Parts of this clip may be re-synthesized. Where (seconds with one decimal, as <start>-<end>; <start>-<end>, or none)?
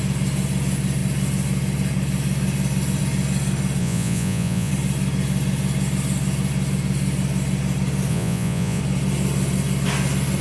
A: 3.8-4.7; 8.1-8.8